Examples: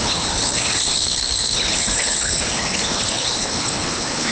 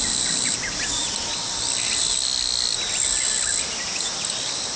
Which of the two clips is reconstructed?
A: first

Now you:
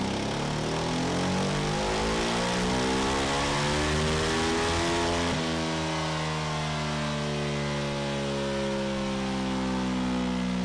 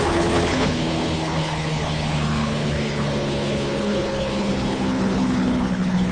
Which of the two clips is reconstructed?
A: second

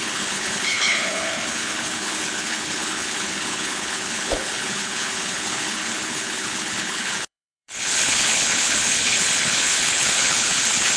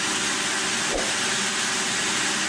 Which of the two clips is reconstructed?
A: first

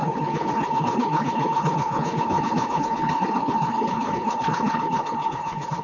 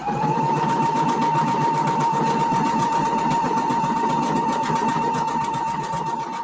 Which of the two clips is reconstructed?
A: first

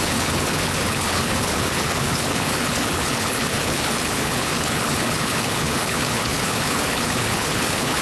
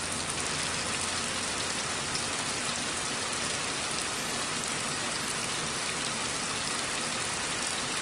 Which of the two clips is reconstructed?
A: first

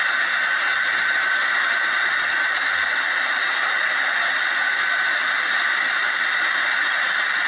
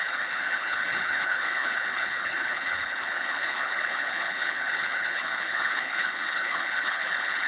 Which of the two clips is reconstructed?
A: second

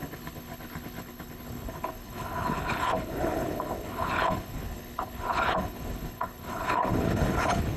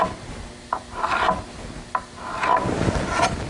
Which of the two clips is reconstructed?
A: first